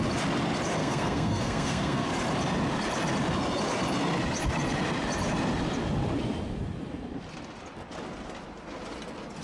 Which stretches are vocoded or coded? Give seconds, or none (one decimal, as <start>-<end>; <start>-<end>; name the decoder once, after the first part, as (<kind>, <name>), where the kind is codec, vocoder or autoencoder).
0.8-2.1 (codec, SNAC)